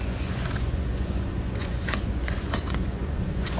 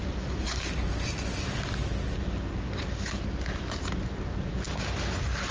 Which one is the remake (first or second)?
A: first